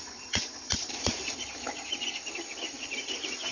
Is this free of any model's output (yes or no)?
no